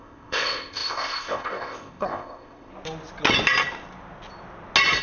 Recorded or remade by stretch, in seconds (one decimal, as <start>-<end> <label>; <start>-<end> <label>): 0.0-2.7 remade; 2.7-5.0 recorded